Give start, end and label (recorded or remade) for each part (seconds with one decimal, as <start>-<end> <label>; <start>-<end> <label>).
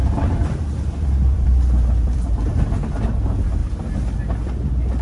0.0-3.6 remade; 3.6-4.3 recorded; 4.3-5.0 remade